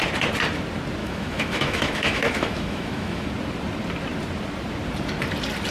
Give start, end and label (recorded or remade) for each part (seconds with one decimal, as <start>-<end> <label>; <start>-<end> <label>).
0.0-1.0 recorded; 1.0-3.3 remade; 3.3-5.7 recorded